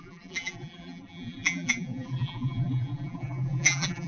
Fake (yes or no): yes